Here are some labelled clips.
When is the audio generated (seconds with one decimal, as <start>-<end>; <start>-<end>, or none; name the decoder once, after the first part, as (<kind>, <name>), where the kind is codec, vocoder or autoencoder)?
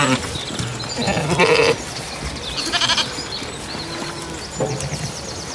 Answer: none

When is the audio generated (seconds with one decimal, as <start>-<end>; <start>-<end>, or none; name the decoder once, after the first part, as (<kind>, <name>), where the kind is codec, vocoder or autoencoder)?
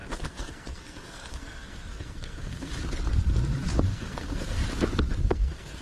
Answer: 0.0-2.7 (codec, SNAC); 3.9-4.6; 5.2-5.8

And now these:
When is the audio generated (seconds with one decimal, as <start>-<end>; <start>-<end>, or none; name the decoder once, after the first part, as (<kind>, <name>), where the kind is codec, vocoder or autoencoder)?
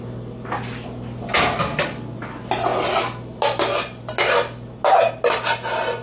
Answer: none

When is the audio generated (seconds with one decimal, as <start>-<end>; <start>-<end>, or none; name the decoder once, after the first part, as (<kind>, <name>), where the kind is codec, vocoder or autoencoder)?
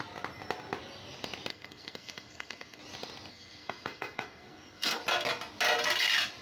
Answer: 1.5-2.8 (codec, SNAC); 3.3-5.0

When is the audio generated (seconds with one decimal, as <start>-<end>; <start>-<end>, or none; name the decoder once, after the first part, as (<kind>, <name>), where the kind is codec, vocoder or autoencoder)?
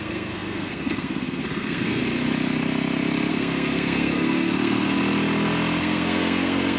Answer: 0.0-2.0 (codec, SNAC); 3.3-5.0; 5.8-6.8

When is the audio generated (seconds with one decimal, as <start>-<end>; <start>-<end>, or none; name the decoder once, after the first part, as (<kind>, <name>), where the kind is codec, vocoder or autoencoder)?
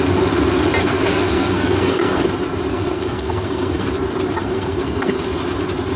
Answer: 0.8-2.2 (codec, SNAC); 2.7-3.9; 4.4-5.2